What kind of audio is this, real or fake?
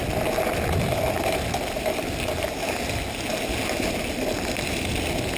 real